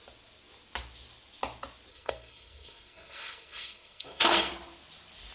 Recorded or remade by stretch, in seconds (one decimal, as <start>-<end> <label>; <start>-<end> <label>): 0.0-1.9 recorded; 1.9-4.5 remade; 4.5-5.3 recorded